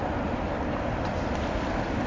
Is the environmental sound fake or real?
real